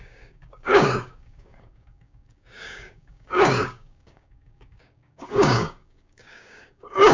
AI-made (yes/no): yes